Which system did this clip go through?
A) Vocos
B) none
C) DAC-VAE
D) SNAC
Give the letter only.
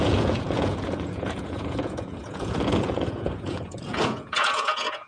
A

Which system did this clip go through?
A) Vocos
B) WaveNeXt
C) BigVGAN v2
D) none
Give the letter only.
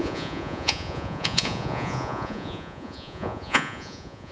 A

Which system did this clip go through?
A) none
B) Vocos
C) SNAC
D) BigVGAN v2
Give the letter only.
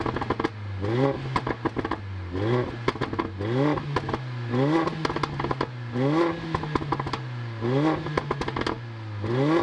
A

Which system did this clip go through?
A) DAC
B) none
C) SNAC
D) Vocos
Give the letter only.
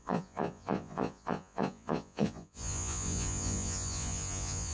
D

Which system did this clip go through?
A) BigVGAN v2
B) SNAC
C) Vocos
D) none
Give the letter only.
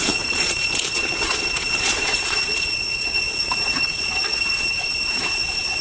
C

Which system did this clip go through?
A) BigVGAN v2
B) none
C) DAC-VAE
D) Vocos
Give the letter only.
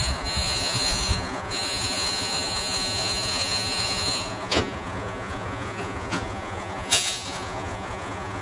D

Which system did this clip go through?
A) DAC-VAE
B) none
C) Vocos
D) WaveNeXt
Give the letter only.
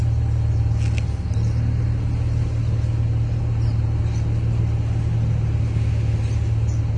B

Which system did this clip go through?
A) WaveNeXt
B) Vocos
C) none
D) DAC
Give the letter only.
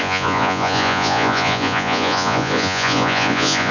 B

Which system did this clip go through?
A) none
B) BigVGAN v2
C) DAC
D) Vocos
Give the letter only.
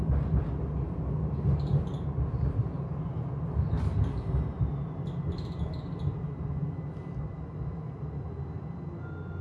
A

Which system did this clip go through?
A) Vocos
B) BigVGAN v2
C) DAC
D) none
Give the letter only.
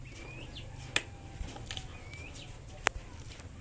D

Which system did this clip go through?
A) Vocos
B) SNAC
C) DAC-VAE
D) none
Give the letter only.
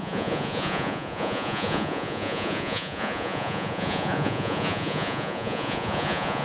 A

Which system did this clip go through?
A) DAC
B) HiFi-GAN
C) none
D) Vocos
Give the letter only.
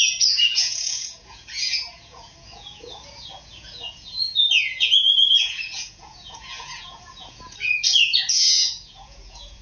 D